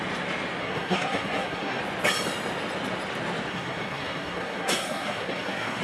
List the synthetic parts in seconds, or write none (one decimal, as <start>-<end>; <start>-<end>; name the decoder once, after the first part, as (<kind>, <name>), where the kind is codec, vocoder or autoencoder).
0.6-1.8 (codec, SNAC); 3.5-5.8

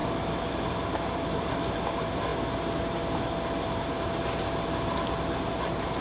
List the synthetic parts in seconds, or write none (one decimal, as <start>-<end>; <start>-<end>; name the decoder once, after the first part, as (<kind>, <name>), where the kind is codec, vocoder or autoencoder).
0.0-2.3 (vocoder, BigVGAN v2)

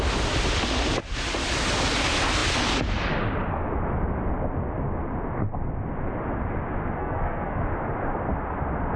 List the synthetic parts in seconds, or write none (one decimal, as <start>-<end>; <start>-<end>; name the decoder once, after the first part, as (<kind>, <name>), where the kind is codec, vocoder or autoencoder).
7.0-7.6 (codec, SNAC)

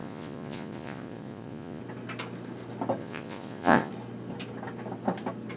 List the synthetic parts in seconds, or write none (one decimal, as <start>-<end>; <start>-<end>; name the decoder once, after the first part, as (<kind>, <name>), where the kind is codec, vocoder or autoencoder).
0.0-1.8 (vocoder, Vocos); 3.0-3.9

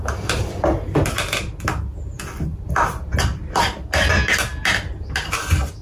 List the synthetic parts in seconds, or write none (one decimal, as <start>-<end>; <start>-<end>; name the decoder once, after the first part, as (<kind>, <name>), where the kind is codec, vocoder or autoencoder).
none

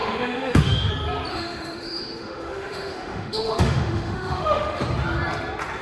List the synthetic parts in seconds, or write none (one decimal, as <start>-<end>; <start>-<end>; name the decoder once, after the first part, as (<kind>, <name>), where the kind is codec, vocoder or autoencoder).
0.0-0.9 (autoencoder, DAC-VAE); 1.3-4.8

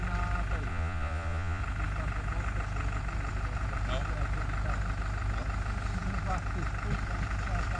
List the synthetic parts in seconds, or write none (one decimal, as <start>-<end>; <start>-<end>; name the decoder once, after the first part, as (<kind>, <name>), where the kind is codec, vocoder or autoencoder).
0.7-1.6 (vocoder, Vocos)